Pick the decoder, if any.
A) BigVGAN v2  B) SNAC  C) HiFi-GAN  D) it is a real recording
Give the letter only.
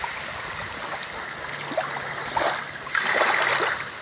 D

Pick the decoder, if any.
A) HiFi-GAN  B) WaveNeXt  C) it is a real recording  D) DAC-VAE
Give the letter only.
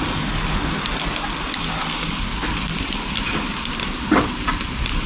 C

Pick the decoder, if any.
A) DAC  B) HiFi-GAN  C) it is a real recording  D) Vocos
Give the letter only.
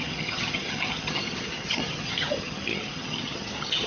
B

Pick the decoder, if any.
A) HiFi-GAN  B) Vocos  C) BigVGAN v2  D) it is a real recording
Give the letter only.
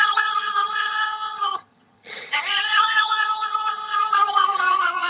A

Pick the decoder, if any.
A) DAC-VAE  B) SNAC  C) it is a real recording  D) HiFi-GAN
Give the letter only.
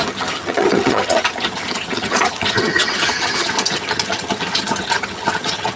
D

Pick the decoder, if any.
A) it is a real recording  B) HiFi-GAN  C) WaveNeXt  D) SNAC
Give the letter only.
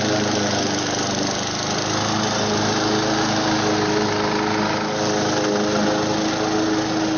A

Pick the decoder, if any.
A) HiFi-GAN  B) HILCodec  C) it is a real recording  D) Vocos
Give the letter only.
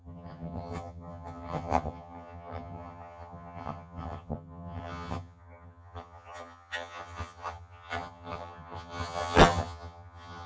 A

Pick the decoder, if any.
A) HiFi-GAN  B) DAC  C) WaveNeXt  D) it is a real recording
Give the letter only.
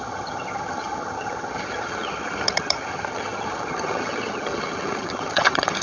A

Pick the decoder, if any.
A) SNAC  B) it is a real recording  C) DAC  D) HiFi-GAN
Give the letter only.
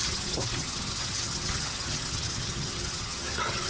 D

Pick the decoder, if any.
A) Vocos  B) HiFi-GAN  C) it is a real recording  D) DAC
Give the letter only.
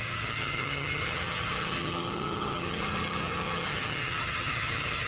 B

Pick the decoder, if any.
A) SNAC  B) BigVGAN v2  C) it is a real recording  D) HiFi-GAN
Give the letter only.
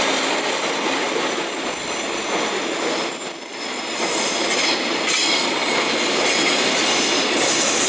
C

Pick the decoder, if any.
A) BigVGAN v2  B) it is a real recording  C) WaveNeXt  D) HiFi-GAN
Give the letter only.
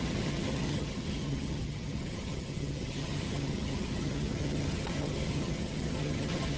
D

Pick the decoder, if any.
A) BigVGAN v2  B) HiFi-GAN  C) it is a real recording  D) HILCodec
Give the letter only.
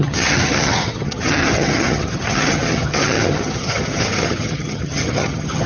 B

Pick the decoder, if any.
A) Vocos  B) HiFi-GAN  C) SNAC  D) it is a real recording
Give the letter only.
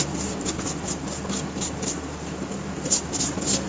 D